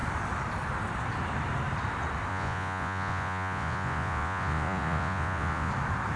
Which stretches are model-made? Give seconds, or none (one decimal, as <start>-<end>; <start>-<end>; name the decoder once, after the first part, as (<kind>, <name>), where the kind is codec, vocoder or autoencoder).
2.3-5.7 (vocoder, Vocos)